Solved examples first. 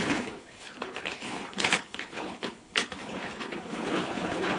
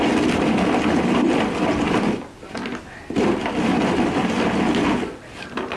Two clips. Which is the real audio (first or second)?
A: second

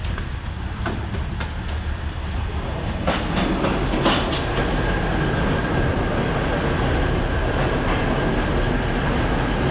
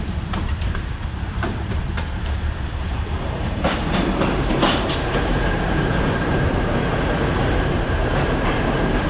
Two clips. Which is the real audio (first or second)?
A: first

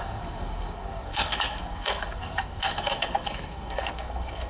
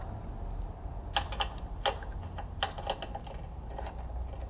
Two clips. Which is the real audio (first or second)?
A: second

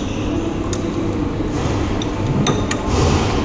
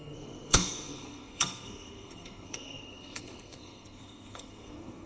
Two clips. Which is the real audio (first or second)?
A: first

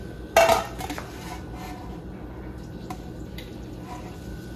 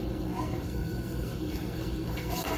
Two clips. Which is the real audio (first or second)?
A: first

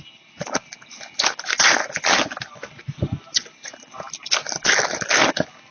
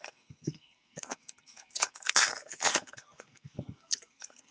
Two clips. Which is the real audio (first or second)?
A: first